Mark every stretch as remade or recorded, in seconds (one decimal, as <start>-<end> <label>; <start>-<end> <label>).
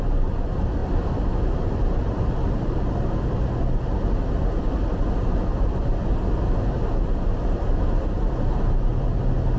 0.0-0.8 recorded; 0.8-1.6 remade; 1.6-9.6 recorded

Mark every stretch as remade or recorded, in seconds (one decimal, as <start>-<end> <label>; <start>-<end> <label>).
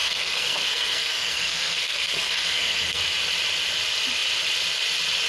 0.0-3.0 remade; 3.0-5.3 recorded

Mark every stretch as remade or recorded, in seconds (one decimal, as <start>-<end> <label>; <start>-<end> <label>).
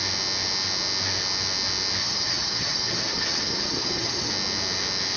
0.0-2.0 recorded; 2.0-4.3 remade; 4.3-5.2 recorded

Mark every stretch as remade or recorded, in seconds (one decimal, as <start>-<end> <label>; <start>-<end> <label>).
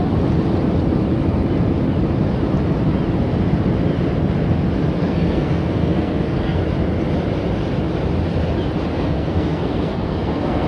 0.0-5.0 recorded; 5.0-6.6 remade; 6.6-8.9 recorded; 8.9-10.7 remade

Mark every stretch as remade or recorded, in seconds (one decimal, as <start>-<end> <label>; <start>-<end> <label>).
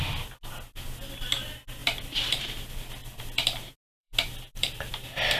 0.0-1.8 recorded; 1.8-2.4 remade; 2.4-3.0 recorded; 3.0-4.9 remade; 4.9-5.4 recorded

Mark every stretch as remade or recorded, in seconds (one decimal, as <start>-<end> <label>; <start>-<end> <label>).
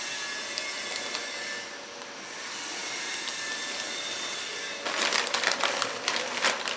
0.0-2.8 recorded; 2.8-6.8 remade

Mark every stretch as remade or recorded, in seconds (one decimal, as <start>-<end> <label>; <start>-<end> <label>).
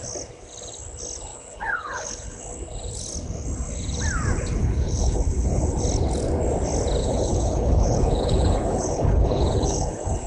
0.0-1.3 recorded; 1.3-2.4 remade; 2.4-4.6 recorded; 4.6-5.6 remade; 5.6-7.0 recorded; 7.0-10.3 remade